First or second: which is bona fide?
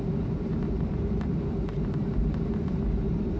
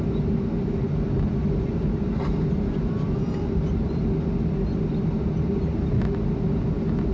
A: second